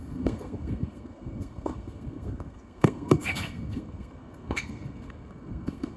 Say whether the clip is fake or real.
fake